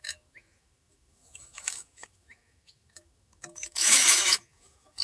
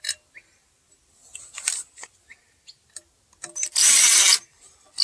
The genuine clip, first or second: second